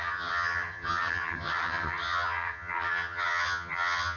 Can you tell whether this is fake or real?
fake